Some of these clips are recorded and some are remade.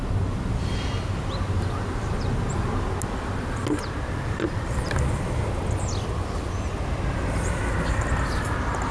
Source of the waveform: recorded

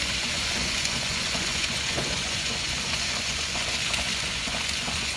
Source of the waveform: remade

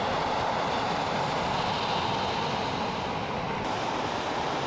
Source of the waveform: recorded